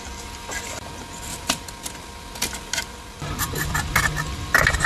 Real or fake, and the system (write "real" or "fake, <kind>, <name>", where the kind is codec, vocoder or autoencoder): real